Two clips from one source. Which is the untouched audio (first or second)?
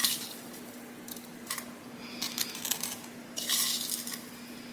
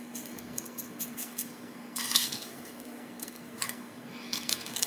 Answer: first